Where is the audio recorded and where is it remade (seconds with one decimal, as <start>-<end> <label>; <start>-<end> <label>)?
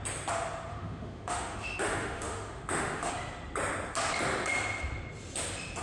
0.0-0.7 recorded; 0.7-3.1 remade; 3.1-5.8 recorded